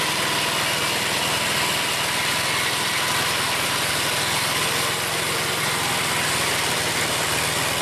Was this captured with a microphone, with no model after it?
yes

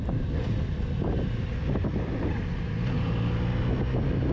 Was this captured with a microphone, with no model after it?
yes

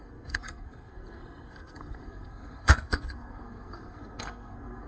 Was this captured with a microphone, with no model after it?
no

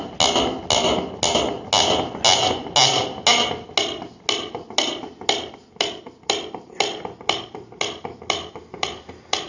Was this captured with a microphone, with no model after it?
yes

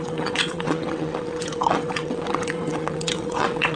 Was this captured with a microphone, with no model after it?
no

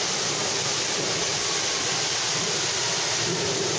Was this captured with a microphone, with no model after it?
yes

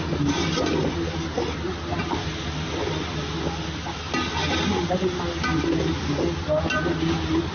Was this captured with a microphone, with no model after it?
yes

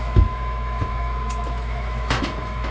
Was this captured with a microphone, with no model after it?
no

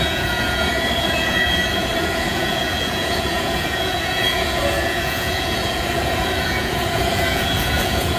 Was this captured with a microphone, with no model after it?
no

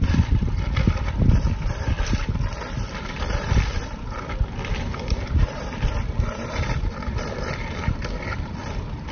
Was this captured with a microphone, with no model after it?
no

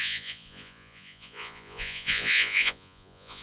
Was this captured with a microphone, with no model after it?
no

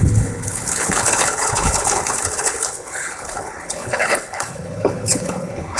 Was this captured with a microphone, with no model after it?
no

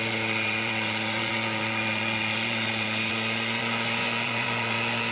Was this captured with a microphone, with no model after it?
no